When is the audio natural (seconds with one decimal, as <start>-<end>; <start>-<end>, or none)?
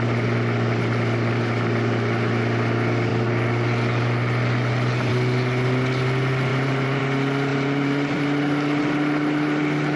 0.0-6.5; 7.0-7.5; 8.2-10.0